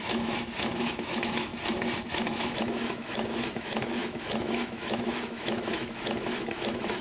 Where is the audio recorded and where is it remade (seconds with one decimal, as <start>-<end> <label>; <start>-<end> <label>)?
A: 0.0-1.5 remade; 1.5-2.1 recorded; 2.1-7.0 remade